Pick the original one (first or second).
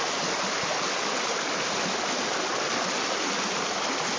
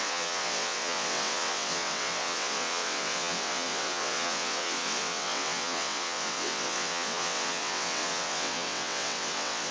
first